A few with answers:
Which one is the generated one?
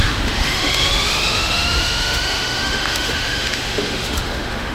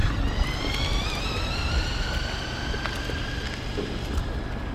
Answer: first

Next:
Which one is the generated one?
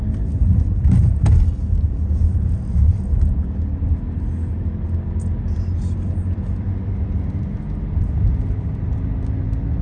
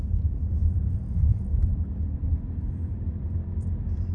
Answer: second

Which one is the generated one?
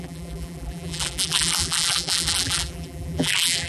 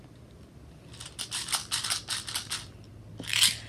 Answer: first